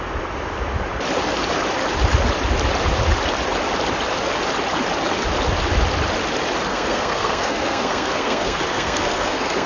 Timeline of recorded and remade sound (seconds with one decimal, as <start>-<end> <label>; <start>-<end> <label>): 0.0-6.7 recorded; 6.7-9.7 remade